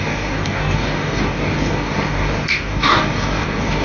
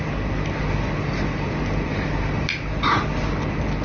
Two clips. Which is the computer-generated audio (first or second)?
first